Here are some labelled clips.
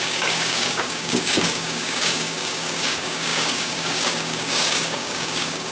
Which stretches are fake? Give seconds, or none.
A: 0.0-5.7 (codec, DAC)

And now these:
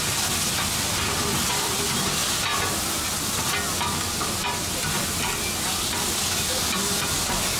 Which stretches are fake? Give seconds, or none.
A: 1.3-1.8 (vocoder, BigVGAN v2)